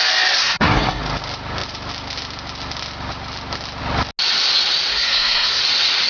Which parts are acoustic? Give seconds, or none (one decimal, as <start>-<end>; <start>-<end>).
0.0-0.4; 1.0-4.9; 5.6-6.1